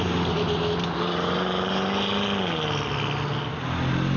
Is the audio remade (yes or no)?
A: no